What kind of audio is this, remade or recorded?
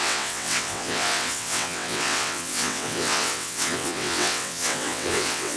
remade